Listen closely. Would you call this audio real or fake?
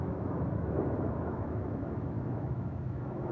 fake